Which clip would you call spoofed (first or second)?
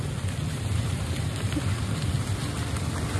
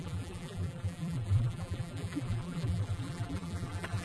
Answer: second